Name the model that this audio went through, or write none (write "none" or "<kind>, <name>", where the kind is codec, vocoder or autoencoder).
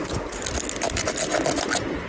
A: none